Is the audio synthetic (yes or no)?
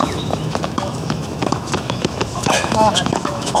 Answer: yes